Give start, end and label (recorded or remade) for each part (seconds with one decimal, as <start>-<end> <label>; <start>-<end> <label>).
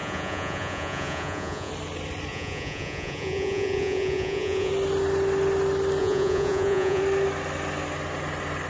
0.0-1.7 remade; 1.7-2.3 recorded; 2.3-4.7 remade; 4.7-6.0 recorded; 6.0-7.0 remade; 7.0-8.7 recorded